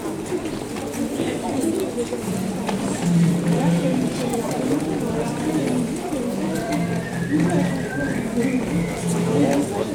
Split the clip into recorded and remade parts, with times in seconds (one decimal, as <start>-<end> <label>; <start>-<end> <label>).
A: 0.0-2.3 recorded; 2.3-6.7 remade; 6.7-7.6 recorded; 7.6-8.4 remade; 8.4-9.9 recorded